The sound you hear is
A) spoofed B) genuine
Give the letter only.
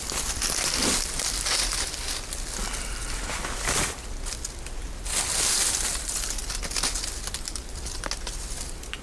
B